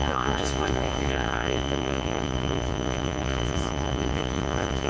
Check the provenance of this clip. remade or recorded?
remade